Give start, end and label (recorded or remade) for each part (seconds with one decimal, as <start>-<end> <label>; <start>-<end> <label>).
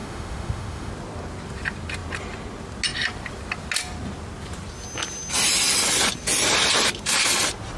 0.0-0.9 remade; 0.9-7.8 recorded